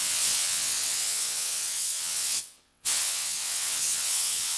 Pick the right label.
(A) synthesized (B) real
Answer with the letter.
A